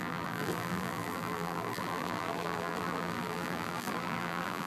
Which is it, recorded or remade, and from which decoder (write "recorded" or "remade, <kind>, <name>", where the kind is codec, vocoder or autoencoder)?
remade, vocoder, BigVGAN v2